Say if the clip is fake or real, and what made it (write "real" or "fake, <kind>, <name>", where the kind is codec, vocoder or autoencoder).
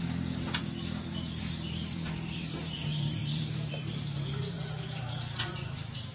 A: fake, vocoder, BigVGAN v2